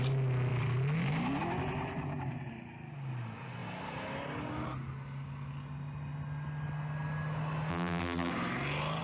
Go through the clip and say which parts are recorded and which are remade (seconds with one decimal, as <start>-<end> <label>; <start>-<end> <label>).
0.0-7.7 recorded; 7.7-8.3 remade; 8.3-9.0 recorded